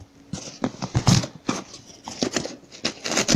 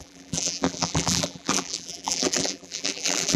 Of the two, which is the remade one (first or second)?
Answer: second